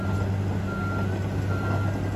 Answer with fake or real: real